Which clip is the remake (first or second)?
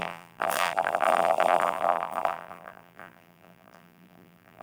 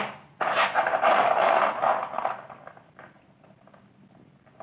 first